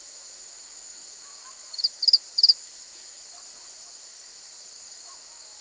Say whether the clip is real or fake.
fake